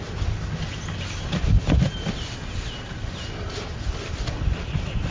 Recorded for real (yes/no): yes